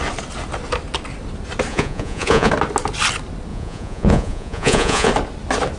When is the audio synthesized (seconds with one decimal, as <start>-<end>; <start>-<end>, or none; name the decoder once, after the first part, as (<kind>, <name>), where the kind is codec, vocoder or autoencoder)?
1.7-2.5 (vocoder, Vocos); 3.5-5.1